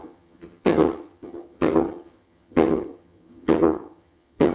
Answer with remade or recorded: remade